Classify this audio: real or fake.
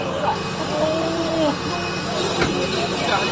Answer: real